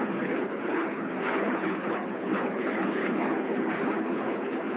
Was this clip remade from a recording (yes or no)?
yes